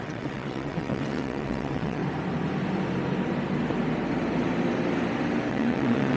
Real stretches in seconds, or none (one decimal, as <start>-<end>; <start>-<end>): 2.0-5.5